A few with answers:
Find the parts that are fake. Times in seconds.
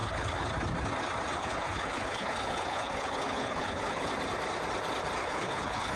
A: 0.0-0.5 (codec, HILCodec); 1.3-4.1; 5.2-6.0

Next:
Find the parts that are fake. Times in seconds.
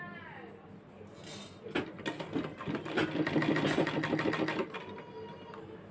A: none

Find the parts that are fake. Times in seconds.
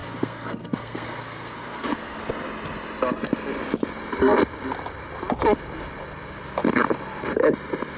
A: 0.0-2.2 (codec, SNAC)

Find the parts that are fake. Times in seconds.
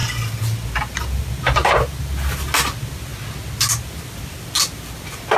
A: none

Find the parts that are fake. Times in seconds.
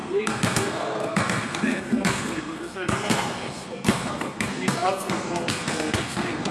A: 0.0-6.5 (codec, SNAC)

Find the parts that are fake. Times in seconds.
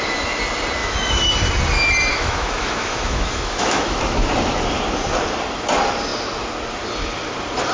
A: 0.8-1.3 (autoencoder, DAC-VAE); 2.1-4.3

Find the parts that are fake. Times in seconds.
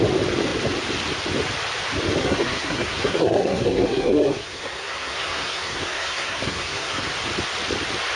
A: 2.2-7.1 (codec, SNAC)